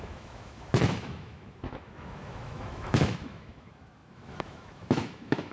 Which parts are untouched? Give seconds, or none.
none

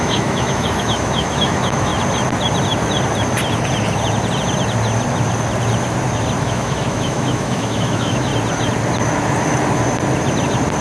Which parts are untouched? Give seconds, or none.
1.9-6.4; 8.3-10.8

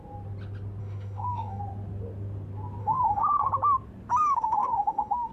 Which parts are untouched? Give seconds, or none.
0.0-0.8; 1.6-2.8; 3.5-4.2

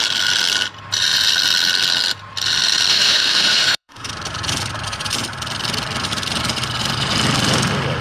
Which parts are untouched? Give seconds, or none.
0.0-2.9; 4.1-8.0

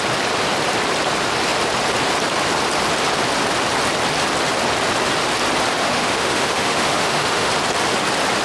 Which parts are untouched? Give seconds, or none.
0.0-5.8; 7.5-8.4